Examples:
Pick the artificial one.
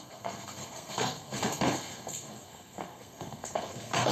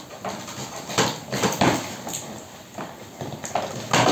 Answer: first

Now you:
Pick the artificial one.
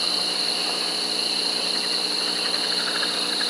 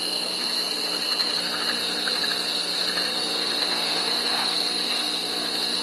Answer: second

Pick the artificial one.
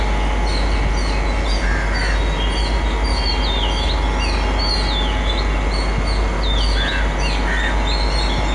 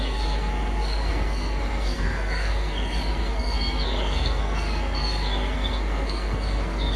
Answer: second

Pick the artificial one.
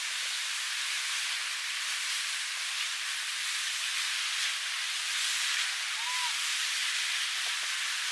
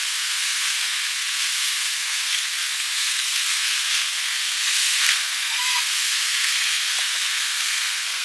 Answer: second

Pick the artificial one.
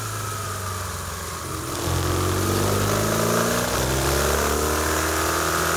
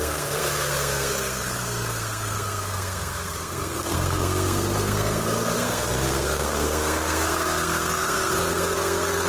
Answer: second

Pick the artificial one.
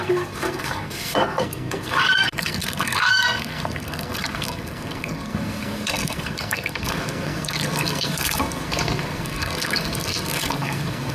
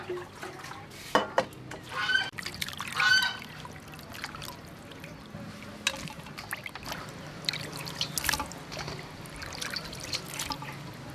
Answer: first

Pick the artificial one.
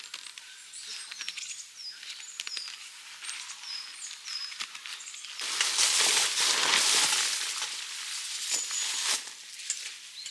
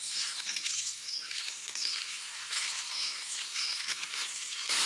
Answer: second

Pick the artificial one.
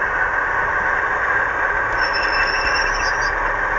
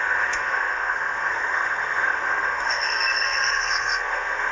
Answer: second